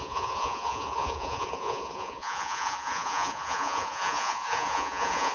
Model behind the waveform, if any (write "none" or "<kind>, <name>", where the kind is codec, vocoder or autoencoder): vocoder, Vocos